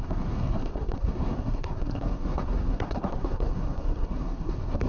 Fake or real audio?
fake